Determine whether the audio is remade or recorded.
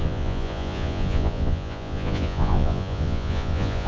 remade